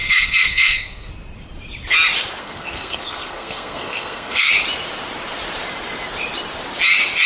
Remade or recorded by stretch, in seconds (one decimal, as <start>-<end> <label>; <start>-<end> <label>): 0.0-1.1 remade; 1.1-2.4 recorded; 2.4-4.5 remade; 4.5-7.3 recorded

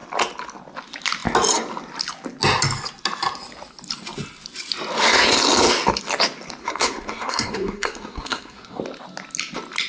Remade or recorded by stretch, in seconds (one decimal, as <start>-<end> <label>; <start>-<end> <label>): 0.0-6.6 recorded; 6.6-8.8 remade; 8.8-9.9 recorded